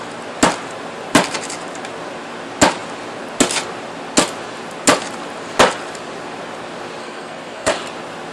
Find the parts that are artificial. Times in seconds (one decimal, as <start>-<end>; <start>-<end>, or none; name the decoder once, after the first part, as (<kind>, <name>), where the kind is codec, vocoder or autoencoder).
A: 7.0-7.7 (codec, SNAC)